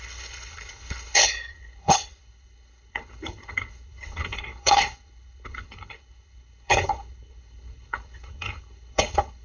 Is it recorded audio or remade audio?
remade